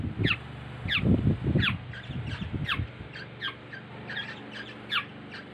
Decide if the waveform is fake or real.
real